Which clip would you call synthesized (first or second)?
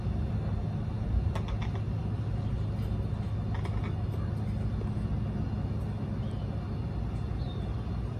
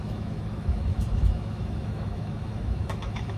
second